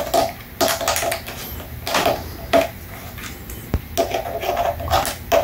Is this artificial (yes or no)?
no